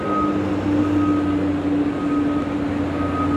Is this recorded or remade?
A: recorded